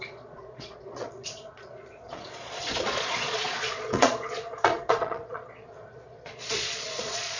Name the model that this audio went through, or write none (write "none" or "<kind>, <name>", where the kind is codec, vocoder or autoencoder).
vocoder, Vocos